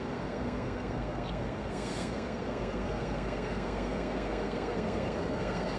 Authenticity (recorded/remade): remade